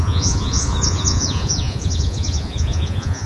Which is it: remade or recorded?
remade